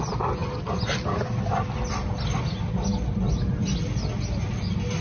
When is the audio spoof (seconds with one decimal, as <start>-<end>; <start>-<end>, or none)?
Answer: none